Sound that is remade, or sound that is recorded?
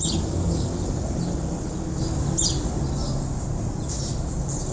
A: recorded